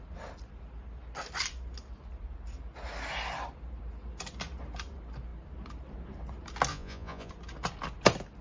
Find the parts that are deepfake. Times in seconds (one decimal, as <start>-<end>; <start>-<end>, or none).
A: 6.7-7.3